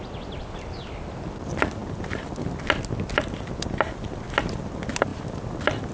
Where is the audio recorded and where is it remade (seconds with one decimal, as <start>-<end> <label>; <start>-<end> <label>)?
0.0-5.9 recorded